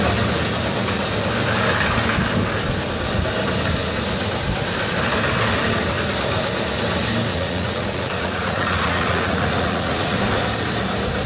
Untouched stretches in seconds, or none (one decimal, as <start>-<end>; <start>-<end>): 0.0-7.3; 10.2-11.3